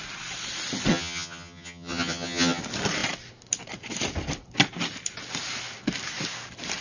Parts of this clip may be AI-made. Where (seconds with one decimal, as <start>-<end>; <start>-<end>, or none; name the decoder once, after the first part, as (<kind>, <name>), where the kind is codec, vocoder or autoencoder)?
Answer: 0.9-2.6 (vocoder, HiFi-GAN)